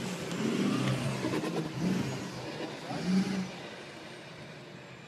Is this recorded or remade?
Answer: recorded